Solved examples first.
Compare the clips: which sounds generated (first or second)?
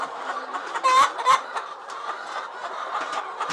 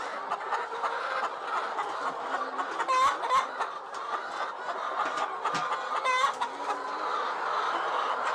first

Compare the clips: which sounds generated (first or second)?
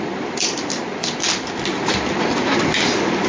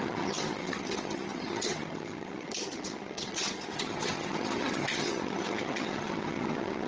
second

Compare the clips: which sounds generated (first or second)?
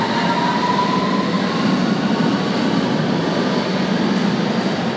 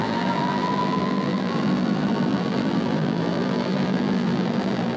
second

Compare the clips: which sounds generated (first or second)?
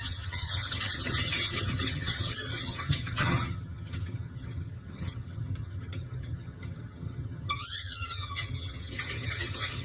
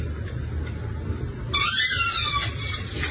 first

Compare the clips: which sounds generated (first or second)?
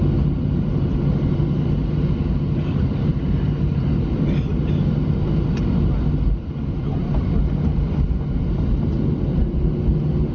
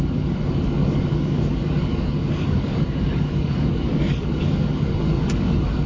second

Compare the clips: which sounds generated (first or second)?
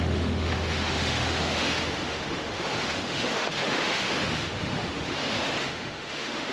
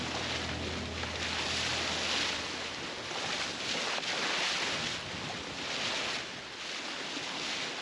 first